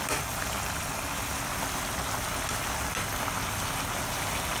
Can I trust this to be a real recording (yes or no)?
yes